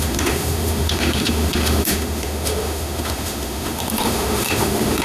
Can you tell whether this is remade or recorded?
remade